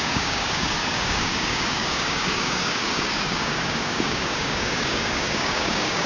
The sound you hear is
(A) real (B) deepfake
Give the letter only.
B